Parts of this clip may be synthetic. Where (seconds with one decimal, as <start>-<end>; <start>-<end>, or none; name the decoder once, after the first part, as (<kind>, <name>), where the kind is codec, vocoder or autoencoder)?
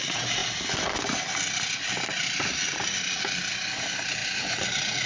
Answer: none